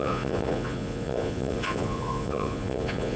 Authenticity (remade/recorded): remade